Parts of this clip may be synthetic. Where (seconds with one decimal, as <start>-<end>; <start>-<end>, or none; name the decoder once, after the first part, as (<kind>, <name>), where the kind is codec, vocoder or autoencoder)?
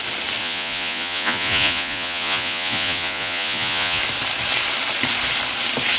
0.4-4.0 (vocoder, Vocos)